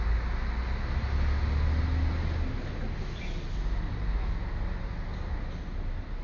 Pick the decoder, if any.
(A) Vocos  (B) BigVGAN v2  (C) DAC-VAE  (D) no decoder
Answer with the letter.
D